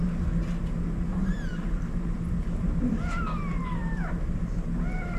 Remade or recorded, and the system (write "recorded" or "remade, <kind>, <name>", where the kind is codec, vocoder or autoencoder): recorded